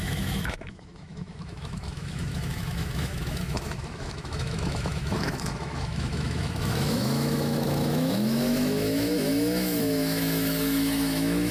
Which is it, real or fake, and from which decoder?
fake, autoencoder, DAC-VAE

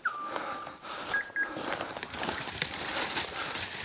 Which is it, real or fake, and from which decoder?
real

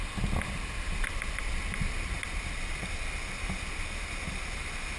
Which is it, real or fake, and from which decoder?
real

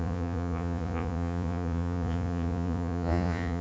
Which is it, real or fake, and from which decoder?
fake, vocoder, Vocos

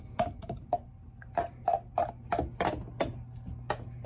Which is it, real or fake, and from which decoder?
real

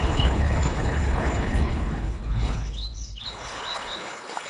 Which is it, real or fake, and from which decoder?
fake, codec, HILCodec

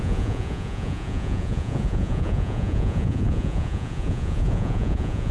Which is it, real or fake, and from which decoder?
fake, vocoder, Vocos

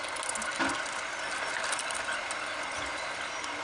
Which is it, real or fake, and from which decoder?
real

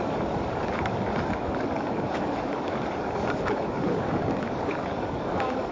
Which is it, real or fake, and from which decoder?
fake, codec, DAC